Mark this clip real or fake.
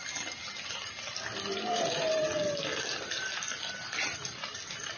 real